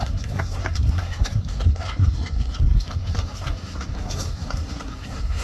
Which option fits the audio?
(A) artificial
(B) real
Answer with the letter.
A